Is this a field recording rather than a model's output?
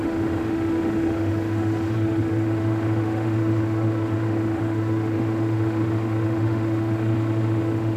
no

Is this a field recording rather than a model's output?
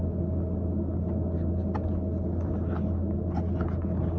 yes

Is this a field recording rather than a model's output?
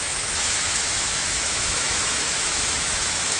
no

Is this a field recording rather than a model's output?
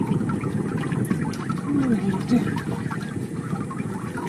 yes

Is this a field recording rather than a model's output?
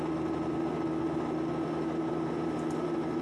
yes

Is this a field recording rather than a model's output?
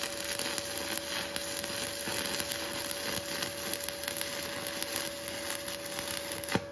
yes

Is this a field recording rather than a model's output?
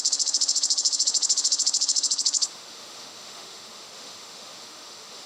no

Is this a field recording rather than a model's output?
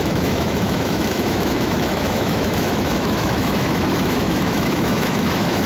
no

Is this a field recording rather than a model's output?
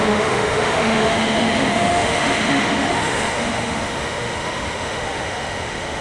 no